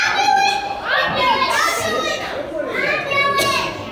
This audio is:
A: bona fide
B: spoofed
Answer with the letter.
A